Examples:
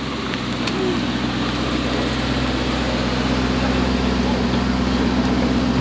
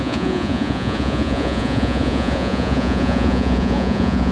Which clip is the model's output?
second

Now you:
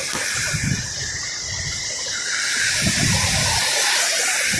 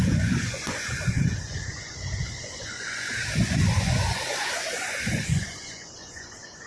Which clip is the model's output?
second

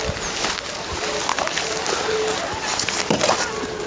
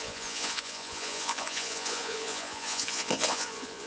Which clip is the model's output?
second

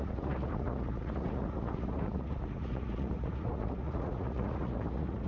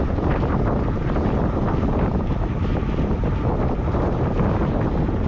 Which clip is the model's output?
first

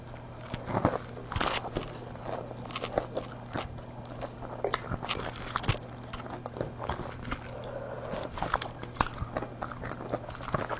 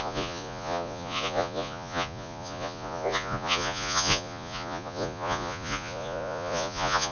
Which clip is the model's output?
second